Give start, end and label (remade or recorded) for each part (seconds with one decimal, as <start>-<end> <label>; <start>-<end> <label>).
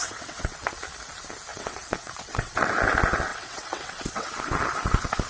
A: 0.0-0.8 remade; 0.8-1.5 recorded; 1.5-2.7 remade; 2.7-3.3 recorded; 3.3-4.3 remade; 4.3-5.3 recorded